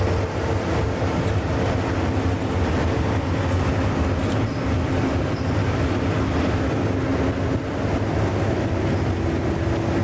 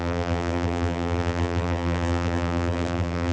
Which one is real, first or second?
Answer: first